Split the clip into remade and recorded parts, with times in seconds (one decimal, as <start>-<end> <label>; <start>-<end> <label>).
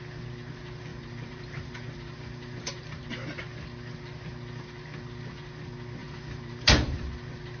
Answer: 0.0-0.9 recorded; 0.9-3.4 remade; 3.4-6.0 recorded; 6.0-7.1 remade; 7.1-7.6 recorded